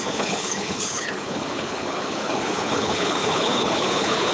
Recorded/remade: remade